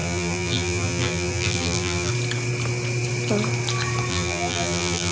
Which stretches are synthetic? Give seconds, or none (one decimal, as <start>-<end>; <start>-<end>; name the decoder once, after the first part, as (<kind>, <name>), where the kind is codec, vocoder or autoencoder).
0.0-2.1 (vocoder, BigVGAN v2); 4.1-5.1